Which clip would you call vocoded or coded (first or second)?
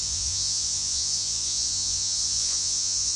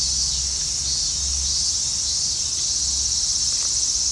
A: first